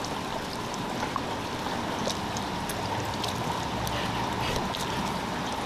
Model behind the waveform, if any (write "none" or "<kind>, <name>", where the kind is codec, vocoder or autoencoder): none